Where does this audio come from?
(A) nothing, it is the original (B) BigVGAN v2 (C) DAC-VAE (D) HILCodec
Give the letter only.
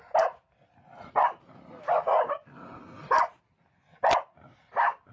A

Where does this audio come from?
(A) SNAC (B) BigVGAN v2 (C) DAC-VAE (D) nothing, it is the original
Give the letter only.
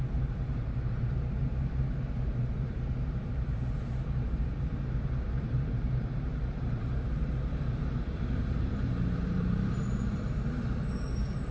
B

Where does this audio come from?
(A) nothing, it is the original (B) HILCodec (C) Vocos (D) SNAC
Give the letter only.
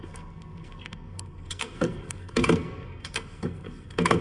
D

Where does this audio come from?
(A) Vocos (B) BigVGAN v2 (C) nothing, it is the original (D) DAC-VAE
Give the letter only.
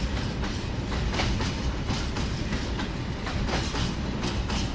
B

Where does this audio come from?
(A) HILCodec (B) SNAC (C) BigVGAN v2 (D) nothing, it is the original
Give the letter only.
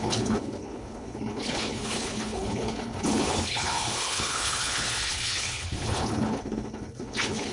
A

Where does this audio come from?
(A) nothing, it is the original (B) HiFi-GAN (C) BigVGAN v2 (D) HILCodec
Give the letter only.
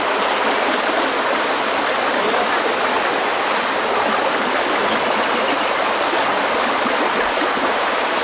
A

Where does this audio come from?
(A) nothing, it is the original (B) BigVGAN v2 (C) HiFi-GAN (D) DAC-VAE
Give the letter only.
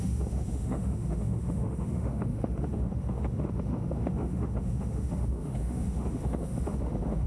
D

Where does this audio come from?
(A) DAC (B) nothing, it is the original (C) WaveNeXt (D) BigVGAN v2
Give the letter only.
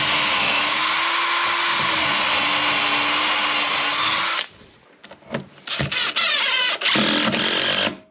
B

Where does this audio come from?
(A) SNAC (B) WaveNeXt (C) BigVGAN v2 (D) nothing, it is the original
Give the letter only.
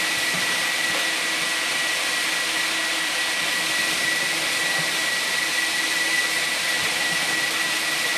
C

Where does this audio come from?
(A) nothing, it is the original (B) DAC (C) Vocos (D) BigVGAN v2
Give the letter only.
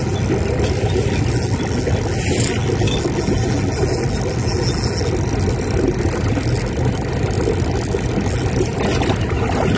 A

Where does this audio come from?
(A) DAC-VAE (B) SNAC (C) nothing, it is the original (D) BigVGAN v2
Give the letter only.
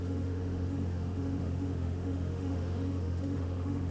A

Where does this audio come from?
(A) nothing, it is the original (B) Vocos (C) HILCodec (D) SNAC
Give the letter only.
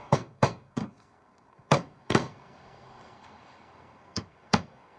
D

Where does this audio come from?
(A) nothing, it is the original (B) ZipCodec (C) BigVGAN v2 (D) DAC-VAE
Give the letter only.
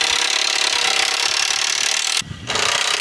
A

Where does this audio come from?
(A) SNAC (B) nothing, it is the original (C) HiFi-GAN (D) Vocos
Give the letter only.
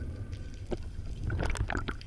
B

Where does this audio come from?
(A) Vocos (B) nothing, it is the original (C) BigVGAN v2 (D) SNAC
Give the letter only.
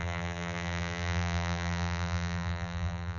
C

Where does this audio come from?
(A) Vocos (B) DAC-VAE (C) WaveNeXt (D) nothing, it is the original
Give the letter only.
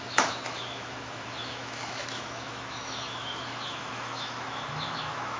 B